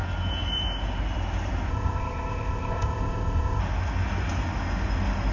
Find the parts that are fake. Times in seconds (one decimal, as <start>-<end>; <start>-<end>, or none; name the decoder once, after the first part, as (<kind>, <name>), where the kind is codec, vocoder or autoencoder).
1.7-3.6 (codec, ZipCodec)